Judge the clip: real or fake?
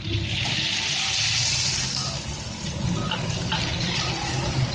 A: real